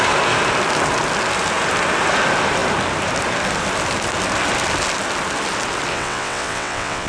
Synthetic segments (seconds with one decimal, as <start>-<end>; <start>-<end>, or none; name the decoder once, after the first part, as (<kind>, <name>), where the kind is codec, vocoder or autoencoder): 5.9-7.1 (vocoder, WaveNeXt)